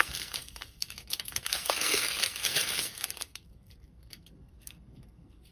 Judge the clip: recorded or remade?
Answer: remade